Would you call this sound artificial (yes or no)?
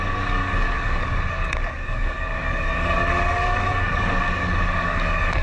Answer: yes